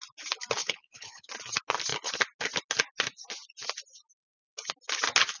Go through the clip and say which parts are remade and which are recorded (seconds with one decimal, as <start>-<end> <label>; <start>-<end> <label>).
0.0-0.6 recorded; 0.6-1.3 remade; 1.3-5.4 recorded